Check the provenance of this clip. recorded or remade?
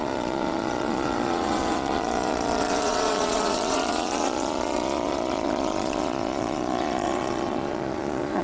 remade